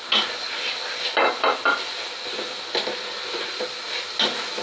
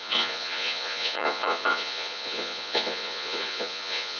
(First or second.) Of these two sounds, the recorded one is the first